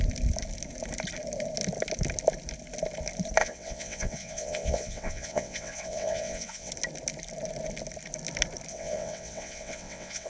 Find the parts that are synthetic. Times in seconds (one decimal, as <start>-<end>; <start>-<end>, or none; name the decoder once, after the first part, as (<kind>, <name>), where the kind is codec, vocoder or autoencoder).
3.4-6.7 (vocoder, WaveNeXt); 8.7-10.3